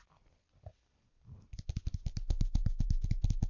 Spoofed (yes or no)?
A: no